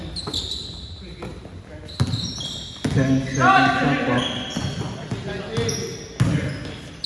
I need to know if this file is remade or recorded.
recorded